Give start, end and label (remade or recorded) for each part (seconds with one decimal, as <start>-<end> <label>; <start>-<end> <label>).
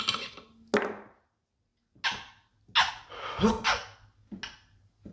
0.0-5.1 recorded